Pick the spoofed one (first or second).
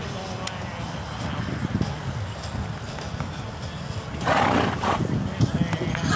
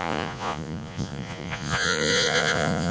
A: second